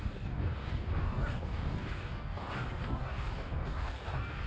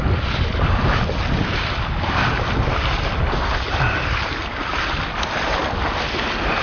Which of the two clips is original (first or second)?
second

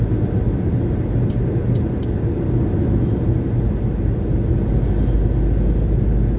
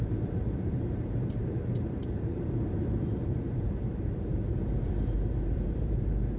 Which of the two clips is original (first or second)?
first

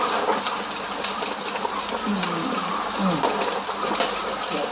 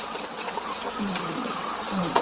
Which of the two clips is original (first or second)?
first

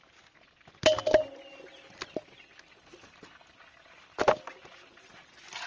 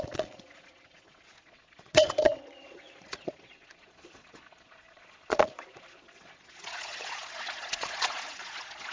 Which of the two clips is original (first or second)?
first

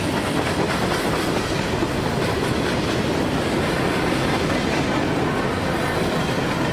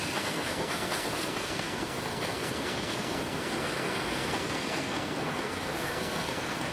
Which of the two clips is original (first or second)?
first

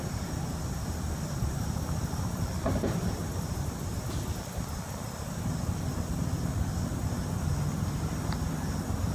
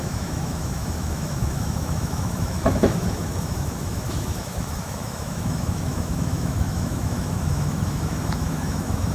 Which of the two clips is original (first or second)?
first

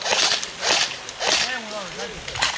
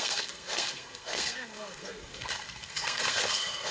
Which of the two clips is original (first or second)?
first